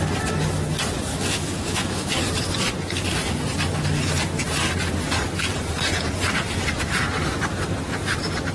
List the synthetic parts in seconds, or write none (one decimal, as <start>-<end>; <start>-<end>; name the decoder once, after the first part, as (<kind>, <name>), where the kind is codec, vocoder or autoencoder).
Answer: 1.1-2.2 (autoencoder, DAC-VAE)